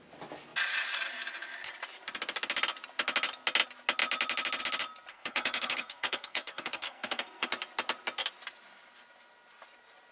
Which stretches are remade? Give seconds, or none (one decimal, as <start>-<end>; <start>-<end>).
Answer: 5.1-7.5